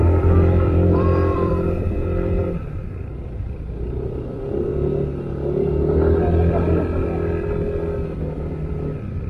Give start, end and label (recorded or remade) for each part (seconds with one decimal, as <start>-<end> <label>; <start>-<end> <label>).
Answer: 0.0-2.4 remade; 2.4-3.0 recorded; 3.0-4.7 remade; 4.7-9.3 recorded